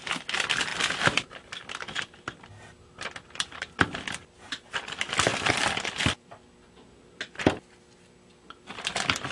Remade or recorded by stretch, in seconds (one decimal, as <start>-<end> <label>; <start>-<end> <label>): 0.0-9.3 recorded